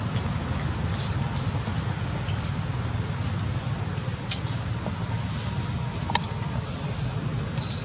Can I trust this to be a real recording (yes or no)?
yes